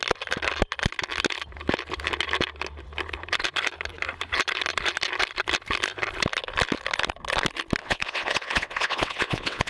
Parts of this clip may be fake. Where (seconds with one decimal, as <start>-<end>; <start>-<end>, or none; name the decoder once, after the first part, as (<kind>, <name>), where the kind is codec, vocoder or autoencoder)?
7.8-9.7 (vocoder, WaveNeXt)